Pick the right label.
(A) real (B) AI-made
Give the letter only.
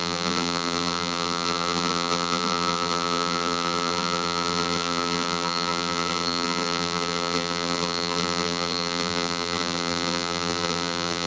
B